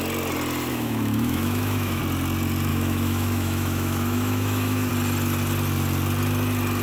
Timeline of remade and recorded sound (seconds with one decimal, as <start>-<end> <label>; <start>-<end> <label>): 0.0-0.7 recorded; 0.7-2.0 remade; 2.0-2.7 recorded; 2.7-4.9 remade; 4.9-6.8 recorded